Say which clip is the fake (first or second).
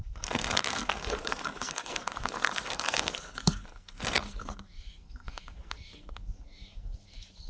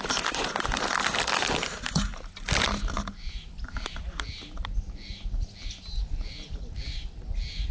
first